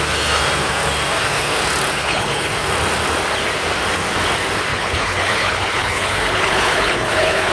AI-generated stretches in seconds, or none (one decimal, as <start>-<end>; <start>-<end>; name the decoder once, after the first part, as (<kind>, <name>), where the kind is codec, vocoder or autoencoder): 2.0-2.5 (codec, HILCodec); 4.7-7.5